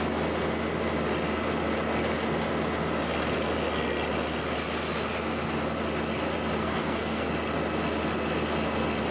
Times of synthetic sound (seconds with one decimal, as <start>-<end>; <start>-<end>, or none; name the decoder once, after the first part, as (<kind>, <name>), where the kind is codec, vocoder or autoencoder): 6.6-7.3 (codec, SNAC)